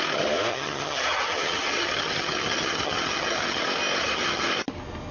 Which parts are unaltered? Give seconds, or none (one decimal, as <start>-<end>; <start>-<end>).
0.0-0.5; 3.6-4.0; 4.5-5.1